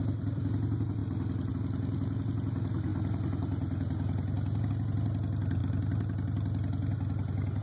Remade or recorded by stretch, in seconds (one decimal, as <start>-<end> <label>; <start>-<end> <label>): 0.0-7.6 recorded